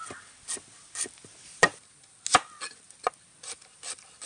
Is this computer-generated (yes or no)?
no